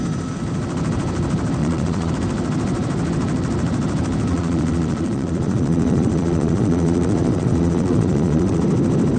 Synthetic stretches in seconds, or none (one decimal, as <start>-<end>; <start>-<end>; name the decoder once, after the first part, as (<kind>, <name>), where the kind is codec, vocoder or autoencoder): 1.6-2.1 (vocoder, Vocos); 4.3-8.6